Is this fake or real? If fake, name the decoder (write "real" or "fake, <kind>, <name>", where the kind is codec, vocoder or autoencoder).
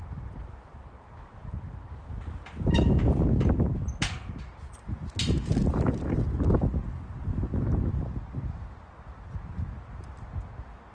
real